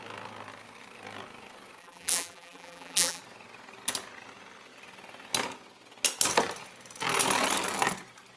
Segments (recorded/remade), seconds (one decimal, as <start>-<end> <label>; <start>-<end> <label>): 0.0-1.8 recorded; 1.8-3.2 remade; 3.2-8.4 recorded